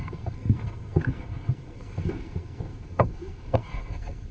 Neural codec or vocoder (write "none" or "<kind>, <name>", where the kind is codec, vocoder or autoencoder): codec, SNAC